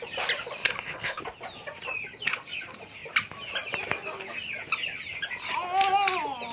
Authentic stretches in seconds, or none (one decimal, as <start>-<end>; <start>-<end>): 0.0-0.6; 1.2-6.5